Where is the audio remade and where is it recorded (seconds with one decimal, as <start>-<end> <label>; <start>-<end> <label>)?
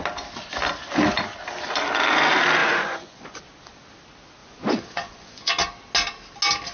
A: 0.0-2.6 recorded; 2.6-3.4 remade; 3.4-4.4 recorded; 4.4-5.5 remade; 5.5-6.7 recorded